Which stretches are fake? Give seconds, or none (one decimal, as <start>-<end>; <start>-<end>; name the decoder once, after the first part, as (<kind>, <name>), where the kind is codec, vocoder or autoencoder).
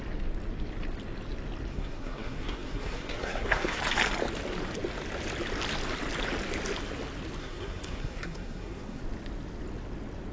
1.7-3.8 (codec, SNAC); 7.4-9.0